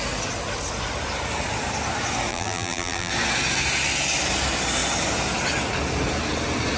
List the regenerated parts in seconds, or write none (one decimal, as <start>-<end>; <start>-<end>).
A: 2.3-3.1